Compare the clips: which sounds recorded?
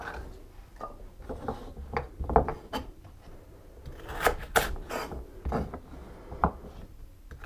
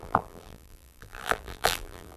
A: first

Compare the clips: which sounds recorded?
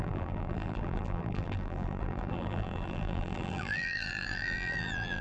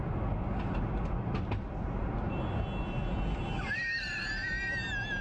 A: second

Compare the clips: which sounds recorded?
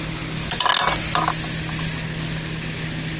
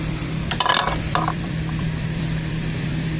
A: first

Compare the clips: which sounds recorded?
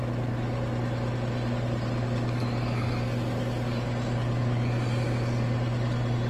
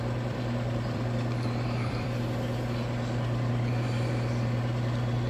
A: first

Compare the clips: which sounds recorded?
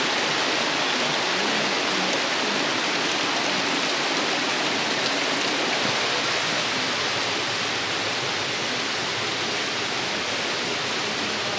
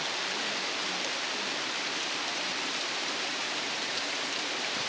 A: first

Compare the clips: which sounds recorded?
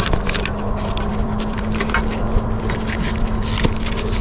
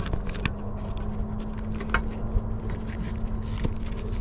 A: second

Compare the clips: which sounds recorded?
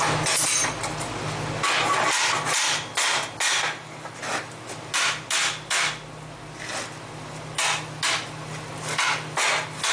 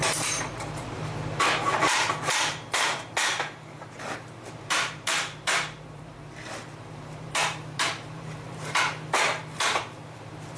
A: first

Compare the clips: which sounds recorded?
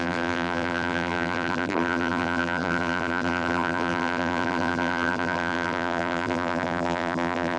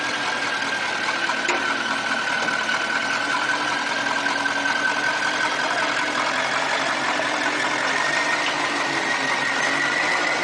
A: second